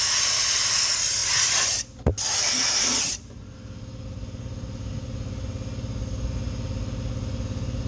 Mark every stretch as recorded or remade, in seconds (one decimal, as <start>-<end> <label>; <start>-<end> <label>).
0.0-7.9 recorded